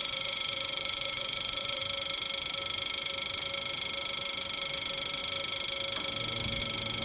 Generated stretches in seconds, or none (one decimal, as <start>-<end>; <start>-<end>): 0.0-1.8